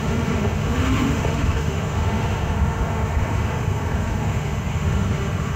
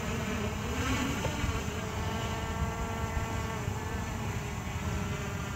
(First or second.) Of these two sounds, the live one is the second